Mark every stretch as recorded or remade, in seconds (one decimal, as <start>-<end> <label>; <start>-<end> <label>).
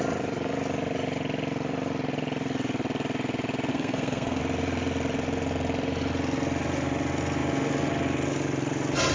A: 0.0-3.7 recorded; 3.7-4.4 remade; 4.4-9.1 recorded